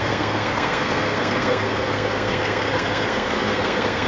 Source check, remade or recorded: remade